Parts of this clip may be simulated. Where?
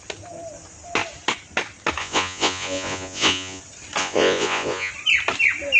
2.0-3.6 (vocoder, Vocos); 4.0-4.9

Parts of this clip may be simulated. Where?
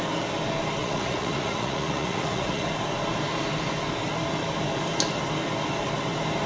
0.8-2.7 (vocoder, Vocos)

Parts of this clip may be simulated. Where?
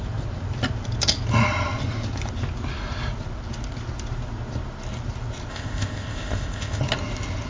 5.5-6.8 (codec, ZipCodec)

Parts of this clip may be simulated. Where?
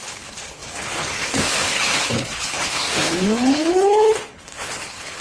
0.0-5.2 (codec, HILCodec)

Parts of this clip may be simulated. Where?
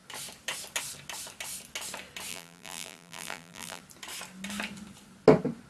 2.3-3.8 (vocoder, BigVGAN v2)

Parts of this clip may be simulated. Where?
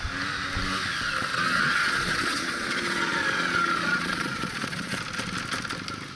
1.3-5.0 (vocoder, Vocos)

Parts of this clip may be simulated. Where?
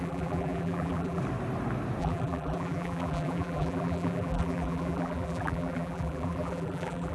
0.0-1.2 (vocoder, BigVGAN v2); 2.0-7.1